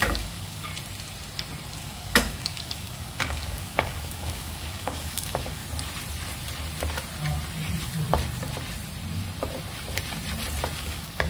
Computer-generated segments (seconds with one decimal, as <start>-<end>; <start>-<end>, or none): 0.0-0.7; 1.7-5.6; 10.8-11.3

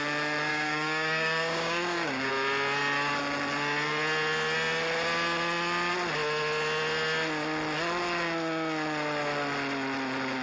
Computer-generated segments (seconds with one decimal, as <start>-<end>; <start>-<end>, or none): 0.5-2.3

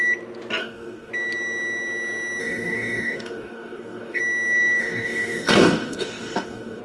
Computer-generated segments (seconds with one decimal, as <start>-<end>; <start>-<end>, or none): 0.6-1.1; 2.4-4.2; 4.8-6.8

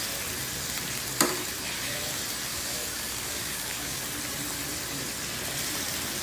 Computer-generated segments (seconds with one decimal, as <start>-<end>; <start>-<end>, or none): 2.5-4.0

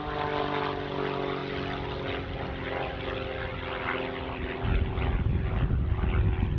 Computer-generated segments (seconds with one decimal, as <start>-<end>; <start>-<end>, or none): none

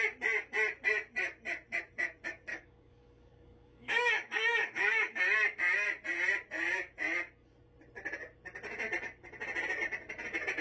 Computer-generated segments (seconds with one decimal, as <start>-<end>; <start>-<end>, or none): 2.5-5.2